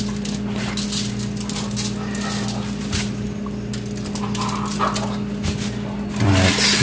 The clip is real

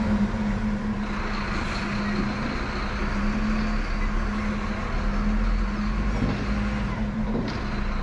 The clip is real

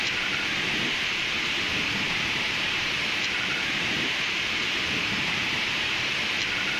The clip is fake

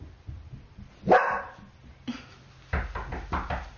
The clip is real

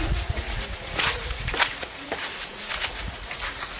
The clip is fake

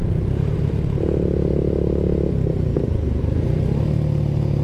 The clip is real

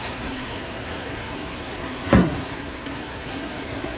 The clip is fake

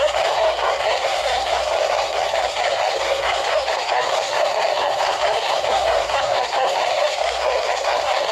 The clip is fake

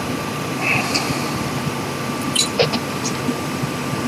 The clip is fake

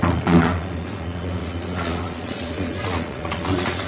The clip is fake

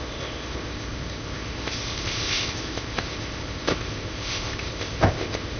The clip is fake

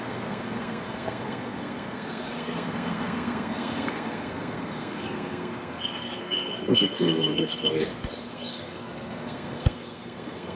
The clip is fake